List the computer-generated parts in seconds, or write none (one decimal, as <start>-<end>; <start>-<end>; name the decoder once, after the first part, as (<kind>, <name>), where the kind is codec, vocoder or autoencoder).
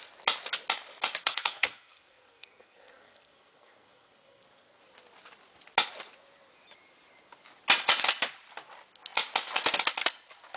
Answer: 1.2-4.8 (codec, SNAC)